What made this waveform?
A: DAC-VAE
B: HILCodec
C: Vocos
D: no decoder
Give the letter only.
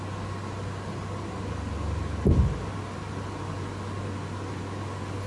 D